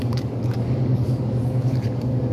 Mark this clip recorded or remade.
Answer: remade